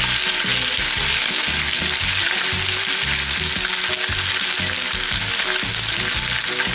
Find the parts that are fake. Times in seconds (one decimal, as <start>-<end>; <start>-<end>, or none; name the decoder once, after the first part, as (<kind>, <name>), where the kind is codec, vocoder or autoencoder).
none